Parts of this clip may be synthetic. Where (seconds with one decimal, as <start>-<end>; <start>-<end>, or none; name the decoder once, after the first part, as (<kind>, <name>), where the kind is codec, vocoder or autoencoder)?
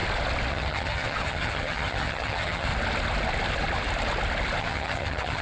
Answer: 0.5-2.7 (vocoder, HiFi-GAN); 4.6-5.4